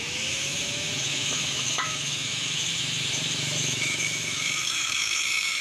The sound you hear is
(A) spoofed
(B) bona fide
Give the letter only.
A